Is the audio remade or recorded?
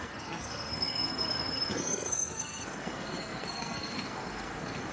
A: remade